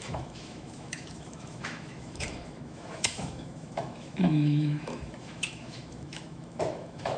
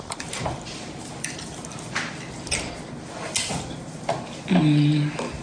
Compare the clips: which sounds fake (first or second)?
first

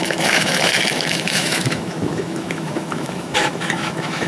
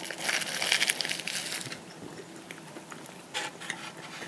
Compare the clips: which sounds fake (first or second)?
first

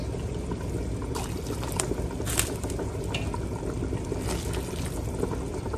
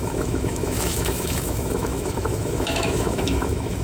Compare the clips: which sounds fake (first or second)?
second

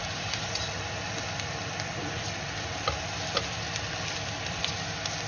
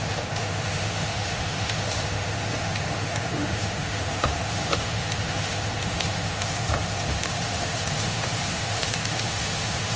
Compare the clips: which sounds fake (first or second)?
second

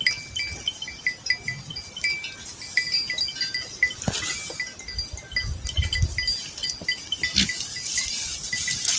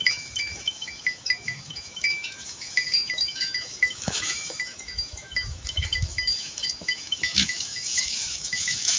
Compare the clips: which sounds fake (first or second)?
second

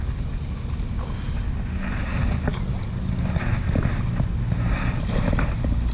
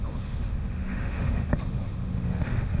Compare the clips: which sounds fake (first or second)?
second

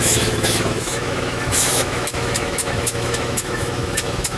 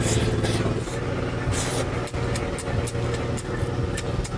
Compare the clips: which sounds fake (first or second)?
first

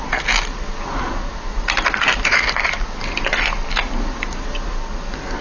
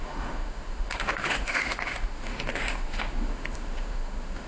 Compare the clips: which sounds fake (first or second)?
second